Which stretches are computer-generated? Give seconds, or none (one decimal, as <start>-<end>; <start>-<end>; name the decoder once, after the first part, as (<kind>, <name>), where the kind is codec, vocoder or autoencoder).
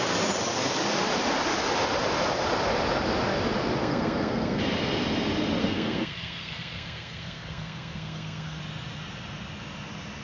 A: 3.8-4.6 (codec, SNAC); 5.6-8.6